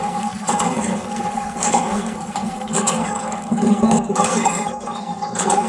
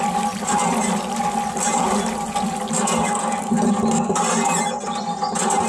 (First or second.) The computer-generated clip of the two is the first